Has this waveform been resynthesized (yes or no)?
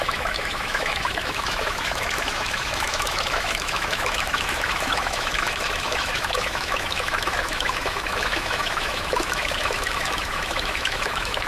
yes